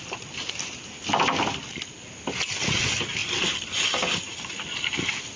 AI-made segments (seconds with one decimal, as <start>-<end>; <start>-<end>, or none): 3.2-4.5